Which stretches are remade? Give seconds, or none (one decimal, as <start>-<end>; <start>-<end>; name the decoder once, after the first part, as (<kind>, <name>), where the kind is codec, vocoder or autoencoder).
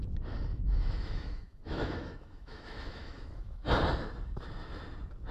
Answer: 0.5-3.7 (autoencoder, DAC-VAE)